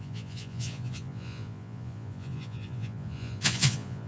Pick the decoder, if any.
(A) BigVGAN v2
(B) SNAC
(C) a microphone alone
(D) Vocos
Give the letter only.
D